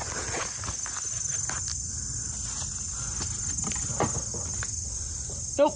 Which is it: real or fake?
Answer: real